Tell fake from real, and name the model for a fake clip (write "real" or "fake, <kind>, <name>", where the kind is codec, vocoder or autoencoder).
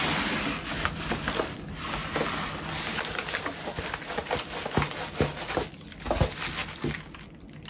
real